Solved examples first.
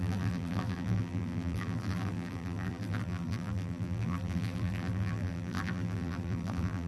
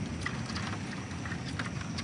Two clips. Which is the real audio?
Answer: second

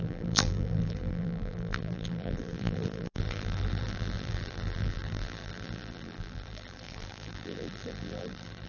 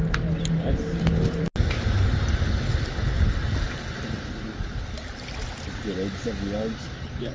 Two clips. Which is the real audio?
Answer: second